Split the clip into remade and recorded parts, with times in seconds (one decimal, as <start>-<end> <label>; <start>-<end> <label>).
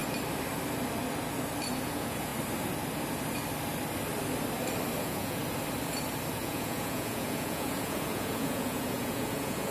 0.0-1.8 recorded; 1.8-2.3 remade; 2.3-5.0 recorded; 5.0-5.4 remade; 5.4-6.3 recorded; 6.3-9.7 remade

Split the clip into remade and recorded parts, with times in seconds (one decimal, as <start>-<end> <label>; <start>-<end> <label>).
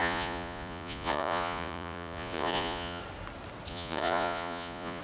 0.0-3.0 remade; 3.0-3.7 recorded; 3.7-5.0 remade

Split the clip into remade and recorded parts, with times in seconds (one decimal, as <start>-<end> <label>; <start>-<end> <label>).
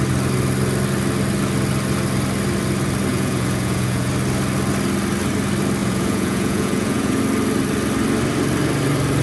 0.0-3.1 recorded; 3.1-4.1 remade; 4.1-5.8 recorded; 5.8-7.2 remade; 7.2-9.2 recorded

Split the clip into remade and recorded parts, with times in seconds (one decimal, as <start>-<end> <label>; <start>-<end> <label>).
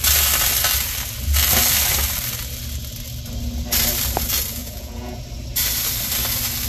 0.0-4.6 recorded; 4.6-5.2 remade; 5.2-6.7 recorded